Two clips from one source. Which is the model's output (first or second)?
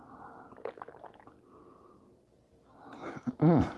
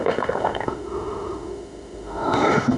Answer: second